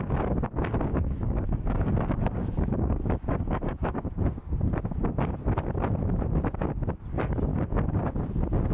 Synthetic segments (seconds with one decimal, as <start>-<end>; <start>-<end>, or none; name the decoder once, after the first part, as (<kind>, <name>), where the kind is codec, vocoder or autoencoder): 0.9-4.0 (codec, DAC); 7.5-8.0